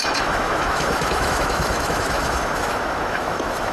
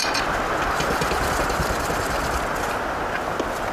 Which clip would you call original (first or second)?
second